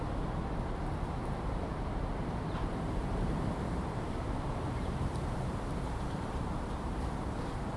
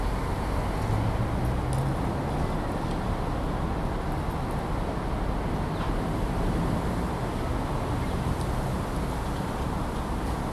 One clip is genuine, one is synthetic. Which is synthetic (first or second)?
first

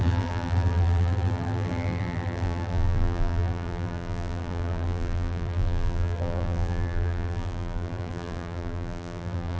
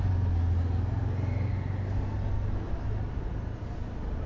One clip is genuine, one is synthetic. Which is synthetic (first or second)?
first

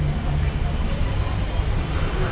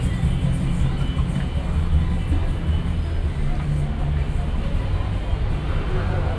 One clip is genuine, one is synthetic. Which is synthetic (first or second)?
first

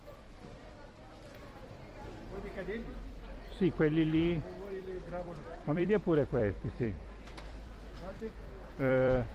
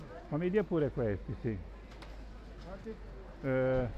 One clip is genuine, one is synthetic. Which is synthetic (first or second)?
first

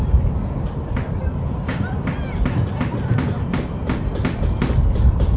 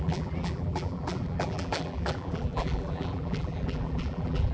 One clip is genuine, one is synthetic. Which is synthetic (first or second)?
second